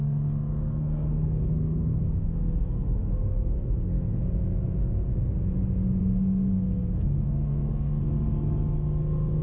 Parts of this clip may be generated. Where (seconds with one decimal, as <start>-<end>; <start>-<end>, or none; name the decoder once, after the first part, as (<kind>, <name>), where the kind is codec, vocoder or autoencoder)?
0.5-4.2 (codec, SNAC); 6.0-8.0